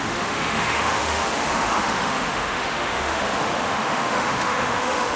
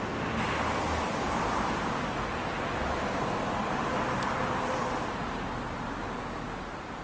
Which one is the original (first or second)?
second